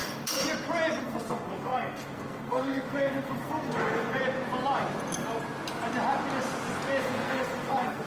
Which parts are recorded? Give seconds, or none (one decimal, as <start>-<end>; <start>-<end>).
0.0-1.0; 4.2-7.0